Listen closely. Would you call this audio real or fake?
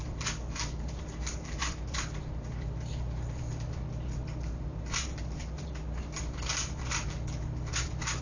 fake